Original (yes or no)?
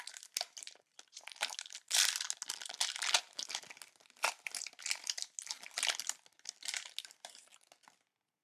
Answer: yes